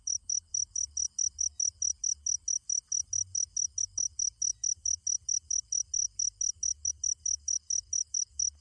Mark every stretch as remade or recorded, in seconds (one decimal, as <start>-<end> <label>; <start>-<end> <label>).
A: 0.0-8.6 recorded